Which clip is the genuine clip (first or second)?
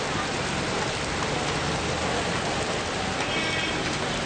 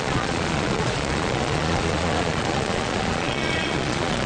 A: first